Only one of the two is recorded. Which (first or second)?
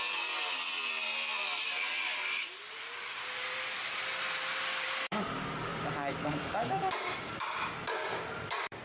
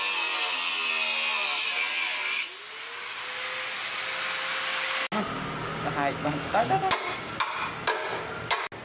second